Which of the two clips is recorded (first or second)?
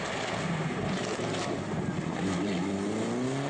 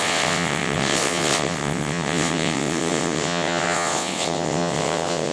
first